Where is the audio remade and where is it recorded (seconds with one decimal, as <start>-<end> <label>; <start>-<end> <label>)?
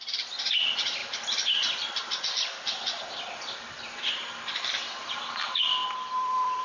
0.0-1.0 remade; 1.0-2.2 recorded; 2.2-6.6 remade